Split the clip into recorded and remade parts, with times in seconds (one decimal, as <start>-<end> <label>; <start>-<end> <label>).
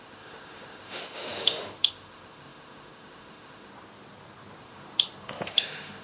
0.0-3.7 remade; 3.7-4.6 recorded; 4.6-6.0 remade